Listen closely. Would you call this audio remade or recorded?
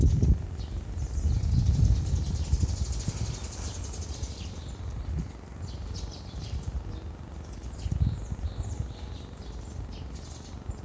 recorded